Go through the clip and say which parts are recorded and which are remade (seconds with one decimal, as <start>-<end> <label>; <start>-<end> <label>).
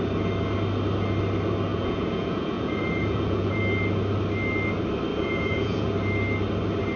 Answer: 0.0-1.7 recorded; 1.7-3.6 remade; 3.6-5.1 recorded; 5.1-5.9 remade; 5.9-7.0 recorded